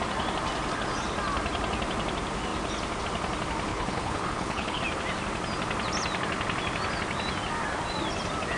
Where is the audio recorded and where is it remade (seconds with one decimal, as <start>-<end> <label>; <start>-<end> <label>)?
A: 0.0-3.7 recorded; 3.7-4.8 remade; 4.8-8.6 recorded